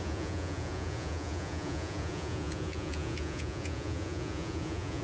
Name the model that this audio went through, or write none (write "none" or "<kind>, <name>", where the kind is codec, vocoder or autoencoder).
vocoder, Vocos